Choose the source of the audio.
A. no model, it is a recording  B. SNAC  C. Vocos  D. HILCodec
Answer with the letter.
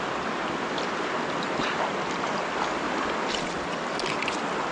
A